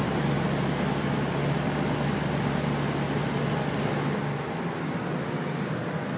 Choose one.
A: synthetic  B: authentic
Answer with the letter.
B